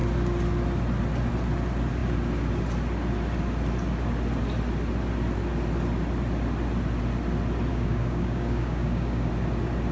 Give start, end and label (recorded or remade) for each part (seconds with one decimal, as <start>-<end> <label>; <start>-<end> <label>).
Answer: 0.0-7.7 recorded; 7.7-9.3 remade; 9.3-9.9 recorded